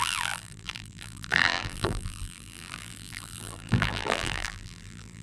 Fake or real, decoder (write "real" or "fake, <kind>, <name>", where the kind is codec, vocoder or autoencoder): fake, vocoder, BigVGAN v2